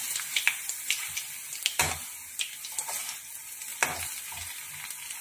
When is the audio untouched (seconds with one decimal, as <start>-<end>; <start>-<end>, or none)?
1.8-5.2